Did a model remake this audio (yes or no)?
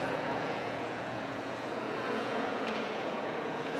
yes